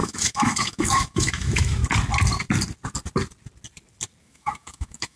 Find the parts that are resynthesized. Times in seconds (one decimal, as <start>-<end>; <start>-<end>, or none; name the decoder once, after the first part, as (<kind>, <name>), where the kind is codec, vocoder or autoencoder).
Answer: 0.0-1.8 (autoencoder, DAC-VAE); 4.2-5.2